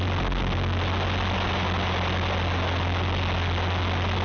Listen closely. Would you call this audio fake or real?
real